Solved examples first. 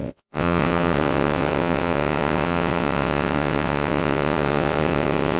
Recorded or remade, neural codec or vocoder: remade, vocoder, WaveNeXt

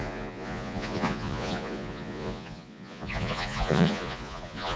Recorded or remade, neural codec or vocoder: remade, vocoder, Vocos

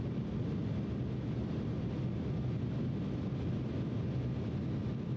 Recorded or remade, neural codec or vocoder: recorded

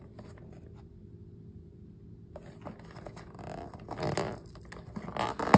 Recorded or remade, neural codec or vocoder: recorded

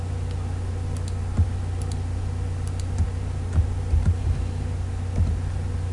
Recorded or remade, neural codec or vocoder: recorded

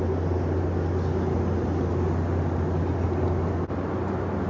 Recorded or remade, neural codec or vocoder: recorded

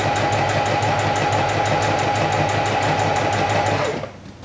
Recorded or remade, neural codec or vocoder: recorded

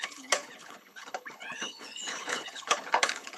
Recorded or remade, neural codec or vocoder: remade, codec, HILCodec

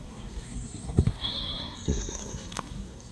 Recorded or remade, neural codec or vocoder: remade, codec, SNAC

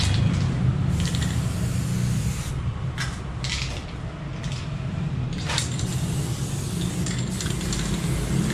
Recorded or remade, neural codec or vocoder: recorded